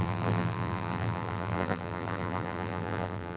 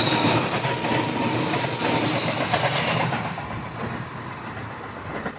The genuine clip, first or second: second